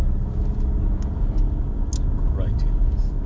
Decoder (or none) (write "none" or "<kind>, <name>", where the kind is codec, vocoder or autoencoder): none